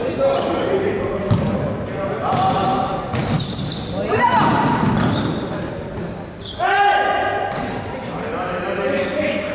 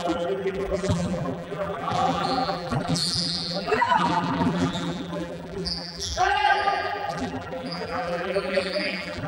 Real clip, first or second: first